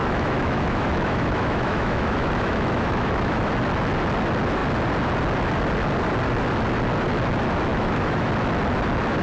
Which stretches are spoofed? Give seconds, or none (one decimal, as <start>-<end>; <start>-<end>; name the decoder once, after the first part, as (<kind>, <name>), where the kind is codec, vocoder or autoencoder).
0.0-3.5 (autoencoder, DAC-VAE); 7.7-8.3